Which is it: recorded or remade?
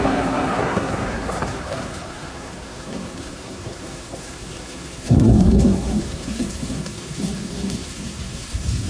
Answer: remade